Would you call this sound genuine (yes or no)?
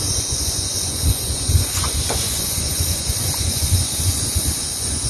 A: no